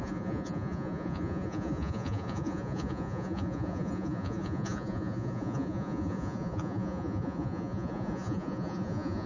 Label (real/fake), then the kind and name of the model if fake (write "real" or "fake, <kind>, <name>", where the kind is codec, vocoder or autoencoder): fake, vocoder, Vocos